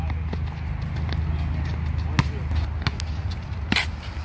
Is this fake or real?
real